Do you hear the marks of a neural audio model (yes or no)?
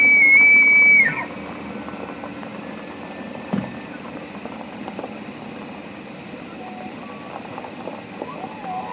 no